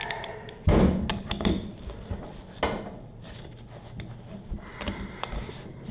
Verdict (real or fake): real